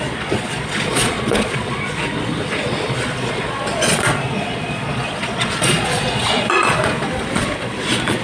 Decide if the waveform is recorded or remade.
remade